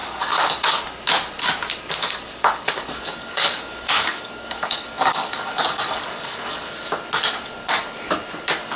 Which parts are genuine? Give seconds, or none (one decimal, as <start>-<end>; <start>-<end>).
0.8-2.0; 6.9-8.8